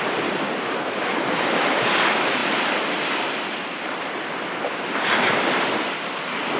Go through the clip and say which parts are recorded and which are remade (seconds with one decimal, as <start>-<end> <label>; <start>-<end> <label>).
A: 0.0-6.6 remade